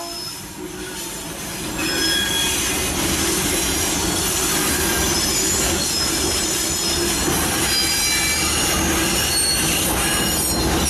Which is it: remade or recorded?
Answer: recorded